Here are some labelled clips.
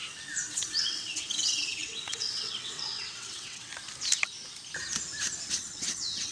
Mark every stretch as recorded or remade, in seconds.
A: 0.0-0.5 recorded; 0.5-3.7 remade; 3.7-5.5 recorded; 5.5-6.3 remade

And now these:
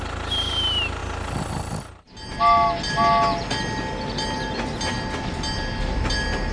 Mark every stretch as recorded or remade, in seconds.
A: 0.0-6.5 recorded

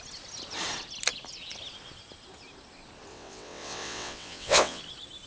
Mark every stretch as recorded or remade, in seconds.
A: 0.0-3.1 recorded; 3.1-4.8 remade; 4.8-5.3 recorded

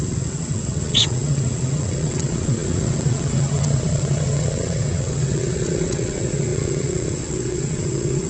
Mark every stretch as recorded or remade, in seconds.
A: 0.0-8.3 remade

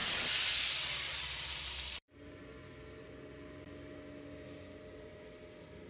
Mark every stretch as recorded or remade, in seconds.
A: 0.0-5.9 recorded

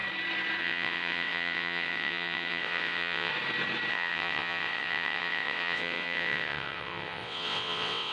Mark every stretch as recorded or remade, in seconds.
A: 0.0-0.6 recorded; 0.6-3.3 remade; 3.3-3.9 recorded; 3.9-8.1 remade

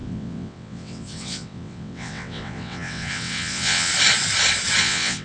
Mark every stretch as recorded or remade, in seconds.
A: 0.0-3.9 remade; 3.9-4.8 recorded; 4.8-5.2 remade

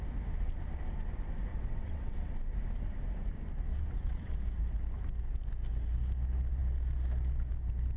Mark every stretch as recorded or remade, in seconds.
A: 0.0-1.5 recorded; 1.5-2.3 remade; 2.3-3.7 recorded; 3.7-4.4 remade; 4.4-8.0 recorded